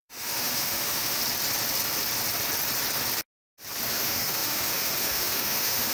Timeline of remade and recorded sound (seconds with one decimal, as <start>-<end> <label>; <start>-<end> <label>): 0.0-1.2 remade; 1.2-3.9 recorded; 3.9-5.9 remade